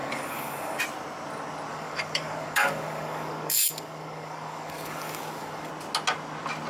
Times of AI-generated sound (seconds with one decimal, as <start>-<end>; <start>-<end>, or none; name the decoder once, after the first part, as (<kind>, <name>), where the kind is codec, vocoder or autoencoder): 0.0-0.8 (codec, DAC); 1.7-5.7